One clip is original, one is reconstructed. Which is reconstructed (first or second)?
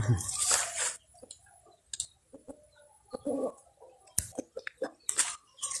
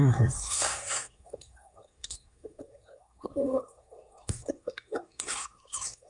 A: second